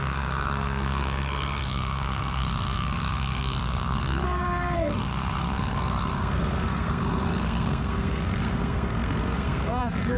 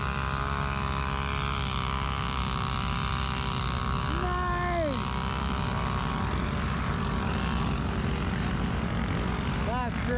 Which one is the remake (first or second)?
first